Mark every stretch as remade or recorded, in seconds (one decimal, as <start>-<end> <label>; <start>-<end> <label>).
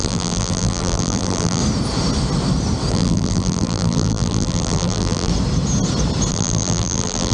0.0-1.6 remade; 1.6-2.9 recorded; 2.9-5.3 remade; 5.3-6.3 recorded; 6.3-7.3 remade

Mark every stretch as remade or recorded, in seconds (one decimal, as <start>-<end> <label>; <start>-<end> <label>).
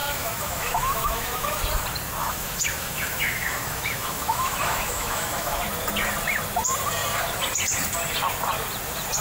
0.0-1.6 remade; 1.6-2.2 recorded; 2.2-5.6 remade; 5.6-9.2 recorded